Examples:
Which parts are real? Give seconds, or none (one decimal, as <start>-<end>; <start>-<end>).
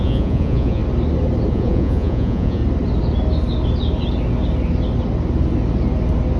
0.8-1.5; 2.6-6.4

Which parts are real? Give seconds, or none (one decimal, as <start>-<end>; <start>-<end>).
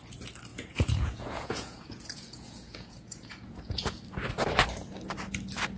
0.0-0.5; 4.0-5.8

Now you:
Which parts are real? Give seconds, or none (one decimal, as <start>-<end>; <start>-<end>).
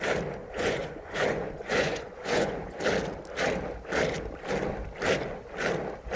0.0-0.4; 2.8-6.2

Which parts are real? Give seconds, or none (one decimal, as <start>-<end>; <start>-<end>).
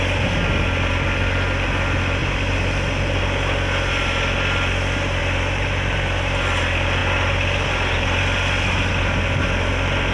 0.0-10.1